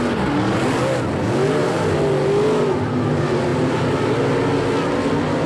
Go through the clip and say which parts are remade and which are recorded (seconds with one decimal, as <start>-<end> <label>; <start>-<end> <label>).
0.0-5.5 recorded